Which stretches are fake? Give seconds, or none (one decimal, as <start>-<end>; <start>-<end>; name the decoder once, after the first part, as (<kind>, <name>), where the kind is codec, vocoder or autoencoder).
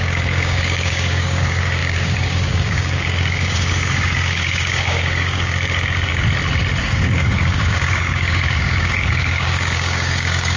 0.0-6.1 (codec, DAC); 6.8-10.6